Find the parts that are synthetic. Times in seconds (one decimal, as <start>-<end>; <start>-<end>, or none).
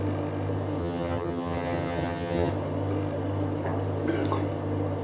0.8-2.5